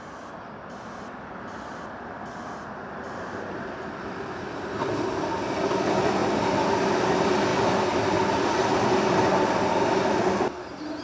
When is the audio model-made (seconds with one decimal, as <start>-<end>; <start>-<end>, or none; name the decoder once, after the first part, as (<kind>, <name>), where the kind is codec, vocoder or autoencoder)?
none